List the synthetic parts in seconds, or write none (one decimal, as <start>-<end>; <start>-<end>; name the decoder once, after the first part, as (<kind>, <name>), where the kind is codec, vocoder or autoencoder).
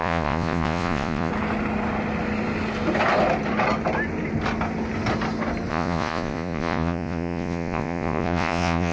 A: 0.0-1.3 (vocoder, Vocos); 5.7-8.9